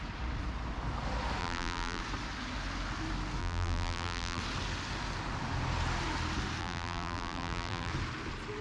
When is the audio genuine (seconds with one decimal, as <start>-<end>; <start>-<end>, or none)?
0.0-1.4; 2.0-3.4; 4.4-6.6; 7.9-8.6